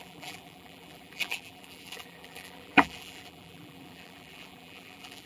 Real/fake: fake